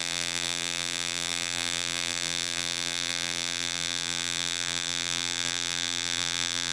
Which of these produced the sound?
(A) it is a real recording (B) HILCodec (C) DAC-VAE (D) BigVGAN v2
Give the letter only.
D